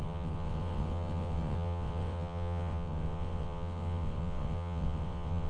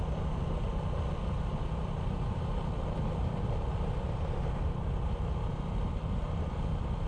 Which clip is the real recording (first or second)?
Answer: second